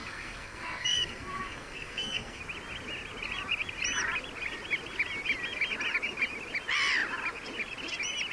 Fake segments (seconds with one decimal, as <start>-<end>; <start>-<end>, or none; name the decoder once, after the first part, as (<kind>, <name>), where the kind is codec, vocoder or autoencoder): 0.0-2.4 (codec, SNAC)